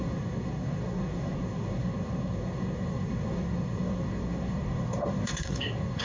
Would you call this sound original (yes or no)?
no